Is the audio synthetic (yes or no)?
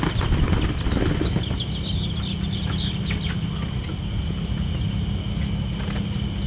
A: no